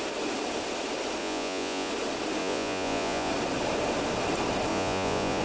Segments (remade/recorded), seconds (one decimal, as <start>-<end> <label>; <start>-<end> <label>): 0.0-1.2 recorded; 1.2-1.9 remade; 1.9-2.4 recorded; 2.4-3.3 remade; 3.3-4.7 recorded; 4.7-5.4 remade